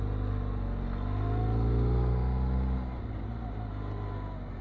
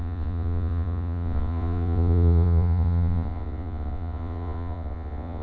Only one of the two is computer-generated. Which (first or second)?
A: second